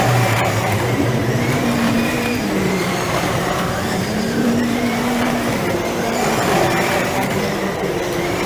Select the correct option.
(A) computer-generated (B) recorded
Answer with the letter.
A